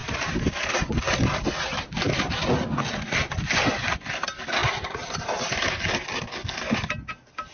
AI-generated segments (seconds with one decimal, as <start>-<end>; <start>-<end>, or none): 0.0-3.7